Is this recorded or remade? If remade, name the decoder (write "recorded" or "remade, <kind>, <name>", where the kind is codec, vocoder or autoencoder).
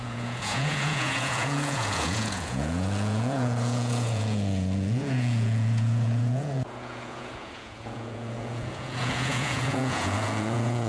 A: remade, vocoder, Vocos